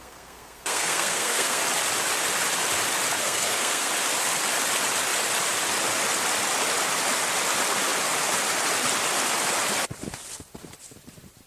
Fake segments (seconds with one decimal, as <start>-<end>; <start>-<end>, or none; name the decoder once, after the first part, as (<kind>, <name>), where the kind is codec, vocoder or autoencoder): 0.0-1.6 (codec, SNAC); 3.2-3.9

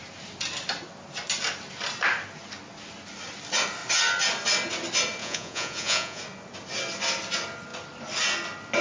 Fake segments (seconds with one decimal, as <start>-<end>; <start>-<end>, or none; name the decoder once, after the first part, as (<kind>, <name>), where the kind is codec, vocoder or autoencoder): 5.2-6.2 (vocoder, Vocos)

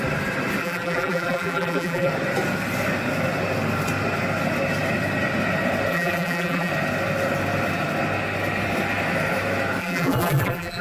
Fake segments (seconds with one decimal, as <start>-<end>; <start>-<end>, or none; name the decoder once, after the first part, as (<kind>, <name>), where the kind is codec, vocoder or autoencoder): 0.6-2.1 (vocoder, BigVGAN v2); 5.9-6.7; 9.8-10.8

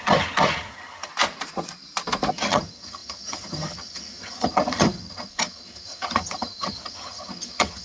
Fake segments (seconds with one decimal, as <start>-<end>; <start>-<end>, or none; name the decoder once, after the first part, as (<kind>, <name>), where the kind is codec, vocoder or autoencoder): 0.0-1.1 (vocoder, HiFi-GAN); 2.3-7.8

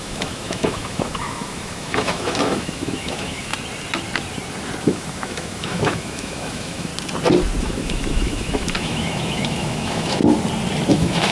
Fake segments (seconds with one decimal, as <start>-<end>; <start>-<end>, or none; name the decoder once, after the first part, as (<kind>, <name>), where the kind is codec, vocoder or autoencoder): 0.0-3.5 (autoencoder, DAC-VAE); 4.8-6.9; 7.6-10.2; 10.9-11.3

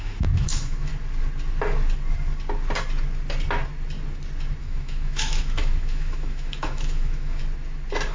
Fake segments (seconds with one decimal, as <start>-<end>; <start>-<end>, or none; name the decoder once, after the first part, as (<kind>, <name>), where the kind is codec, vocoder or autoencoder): 0.0-0.9 (autoencoder, DAC-VAE); 4.6-7.4

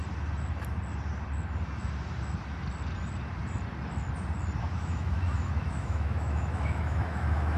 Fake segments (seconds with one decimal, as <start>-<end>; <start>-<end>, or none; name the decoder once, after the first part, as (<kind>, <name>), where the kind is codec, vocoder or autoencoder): 4.6-7.6 (autoencoder, DAC-VAE)